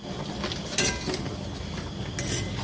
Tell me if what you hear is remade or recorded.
recorded